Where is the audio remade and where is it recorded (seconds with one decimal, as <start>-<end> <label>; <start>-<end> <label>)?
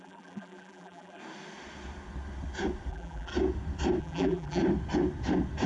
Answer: 0.0-1.2 remade; 1.2-2.9 recorded; 2.9-3.3 remade; 3.3-4.0 recorded; 4.0-4.6 remade; 4.6-5.7 recorded